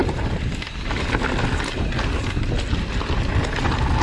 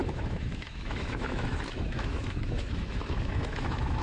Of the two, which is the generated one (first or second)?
second